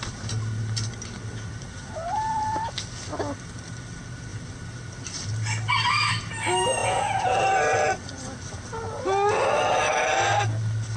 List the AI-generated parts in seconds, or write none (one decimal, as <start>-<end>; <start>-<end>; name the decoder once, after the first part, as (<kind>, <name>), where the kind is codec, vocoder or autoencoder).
6.8-7.4 (vocoder, Vocos)